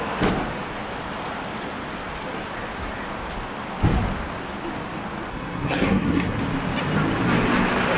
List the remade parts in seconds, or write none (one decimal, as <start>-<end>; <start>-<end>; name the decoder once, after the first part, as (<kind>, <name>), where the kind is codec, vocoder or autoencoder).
5.3-6.4 (codec, SNAC)